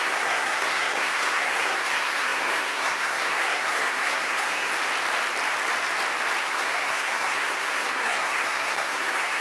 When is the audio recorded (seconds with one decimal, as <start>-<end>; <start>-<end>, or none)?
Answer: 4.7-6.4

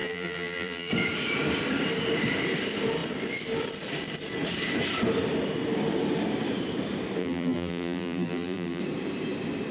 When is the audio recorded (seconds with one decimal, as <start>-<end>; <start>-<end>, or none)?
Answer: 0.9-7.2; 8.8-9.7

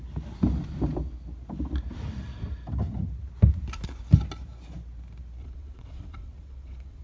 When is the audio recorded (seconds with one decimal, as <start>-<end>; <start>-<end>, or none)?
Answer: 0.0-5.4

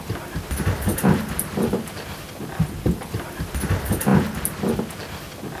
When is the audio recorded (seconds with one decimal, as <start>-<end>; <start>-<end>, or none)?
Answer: 0.0-0.9; 3.5-5.6